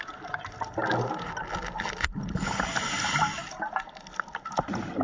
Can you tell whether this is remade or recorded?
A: recorded